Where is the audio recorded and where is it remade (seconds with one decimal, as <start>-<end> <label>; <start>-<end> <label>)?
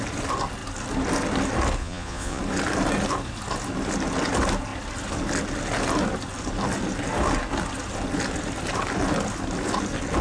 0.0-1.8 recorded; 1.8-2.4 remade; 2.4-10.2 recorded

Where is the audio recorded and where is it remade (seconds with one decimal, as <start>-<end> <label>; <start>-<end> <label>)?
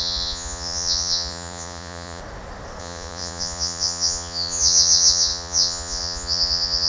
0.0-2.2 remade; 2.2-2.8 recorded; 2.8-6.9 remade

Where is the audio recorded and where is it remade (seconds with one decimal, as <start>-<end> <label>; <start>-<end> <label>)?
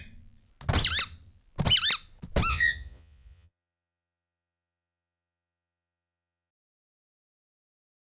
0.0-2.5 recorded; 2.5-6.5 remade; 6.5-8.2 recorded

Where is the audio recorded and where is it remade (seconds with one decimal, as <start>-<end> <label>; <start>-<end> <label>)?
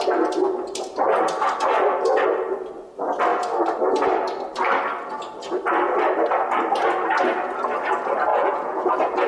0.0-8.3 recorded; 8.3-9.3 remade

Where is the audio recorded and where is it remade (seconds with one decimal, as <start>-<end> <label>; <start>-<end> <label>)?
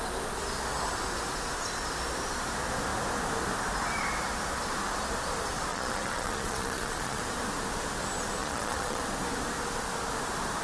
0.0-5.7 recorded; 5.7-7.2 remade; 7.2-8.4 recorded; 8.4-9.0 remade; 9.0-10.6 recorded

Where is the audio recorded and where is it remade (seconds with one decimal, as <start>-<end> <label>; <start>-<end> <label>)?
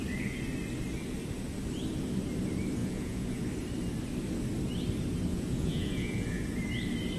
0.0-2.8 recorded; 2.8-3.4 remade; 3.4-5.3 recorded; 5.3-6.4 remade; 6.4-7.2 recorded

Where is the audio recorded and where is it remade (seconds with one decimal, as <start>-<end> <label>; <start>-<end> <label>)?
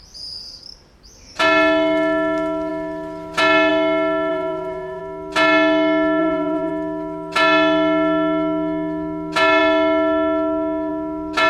0.0-4.3 recorded; 4.3-5.0 remade; 5.0-6.2 recorded; 6.2-6.7 remade; 6.7-11.5 recorded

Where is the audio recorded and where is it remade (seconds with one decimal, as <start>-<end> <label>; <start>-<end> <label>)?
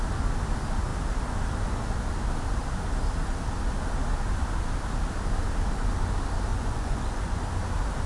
0.0-6.5 recorded; 6.5-7.4 remade; 7.4-8.1 recorded